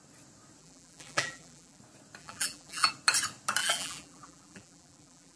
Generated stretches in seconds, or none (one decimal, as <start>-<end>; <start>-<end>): 0.6-1.8; 2.2-2.9; 3.6-5.4